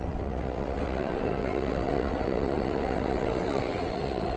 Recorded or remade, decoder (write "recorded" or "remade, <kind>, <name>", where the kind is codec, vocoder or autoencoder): remade, vocoder, WaveNeXt